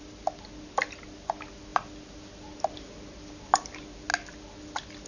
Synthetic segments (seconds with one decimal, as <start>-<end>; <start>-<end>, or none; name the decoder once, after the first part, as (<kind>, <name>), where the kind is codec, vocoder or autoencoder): none